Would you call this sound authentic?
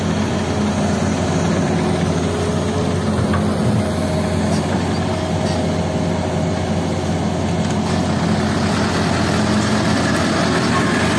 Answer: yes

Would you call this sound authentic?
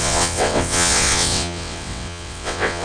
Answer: no